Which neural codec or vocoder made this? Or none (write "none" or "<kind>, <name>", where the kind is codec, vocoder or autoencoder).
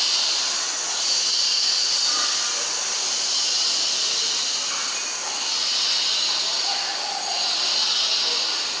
none